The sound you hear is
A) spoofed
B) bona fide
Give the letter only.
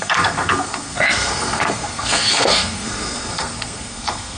A